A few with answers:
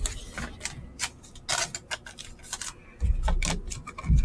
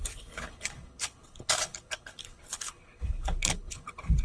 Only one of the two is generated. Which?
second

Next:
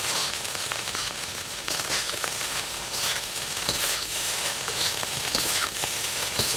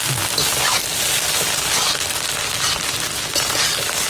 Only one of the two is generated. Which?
first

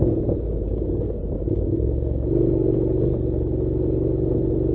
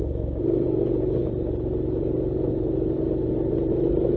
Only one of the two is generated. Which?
second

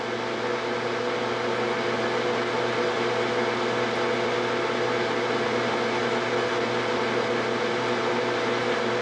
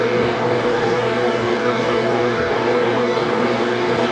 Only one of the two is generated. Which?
second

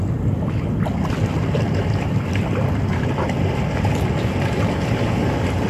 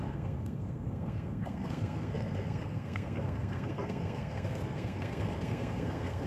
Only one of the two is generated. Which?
second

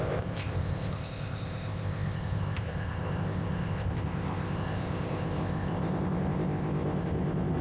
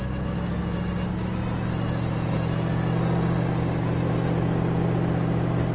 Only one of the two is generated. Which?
first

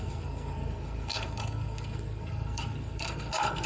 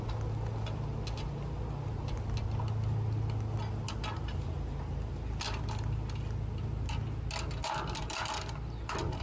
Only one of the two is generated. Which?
first